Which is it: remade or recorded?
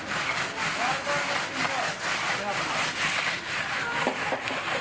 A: recorded